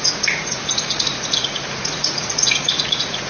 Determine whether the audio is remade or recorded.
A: remade